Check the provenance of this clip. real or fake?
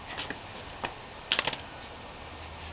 real